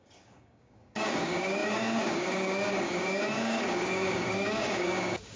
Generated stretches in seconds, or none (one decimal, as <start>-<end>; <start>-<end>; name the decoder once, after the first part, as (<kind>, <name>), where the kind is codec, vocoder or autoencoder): 0.0-5.4 (codec, DAC)